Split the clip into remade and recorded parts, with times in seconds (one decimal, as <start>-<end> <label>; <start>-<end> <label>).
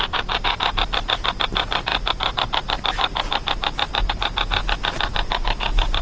0.0-6.0 recorded